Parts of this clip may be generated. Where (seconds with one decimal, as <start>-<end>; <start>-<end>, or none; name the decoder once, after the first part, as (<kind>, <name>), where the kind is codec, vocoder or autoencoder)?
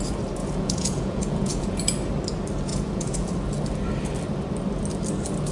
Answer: 0.4-1.8 (vocoder, Vocos); 2.7-3.3